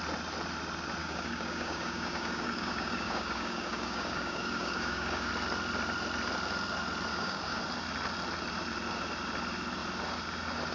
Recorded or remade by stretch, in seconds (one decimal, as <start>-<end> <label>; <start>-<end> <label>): 0.0-1.0 recorded; 1.0-5.3 remade; 5.3-7.1 recorded; 7.1-7.6 remade; 7.6-10.7 recorded